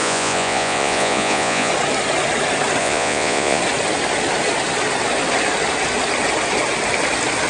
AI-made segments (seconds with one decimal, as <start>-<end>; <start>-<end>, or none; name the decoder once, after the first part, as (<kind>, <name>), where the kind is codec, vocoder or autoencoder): 0.0-1.7 (vocoder, Vocos); 2.8-3.6